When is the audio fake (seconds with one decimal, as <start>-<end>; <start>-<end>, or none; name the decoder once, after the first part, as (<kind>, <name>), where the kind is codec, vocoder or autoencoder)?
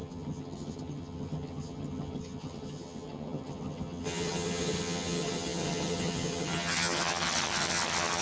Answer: 0.0-8.2 (vocoder, HiFi-GAN)